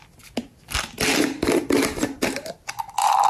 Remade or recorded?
recorded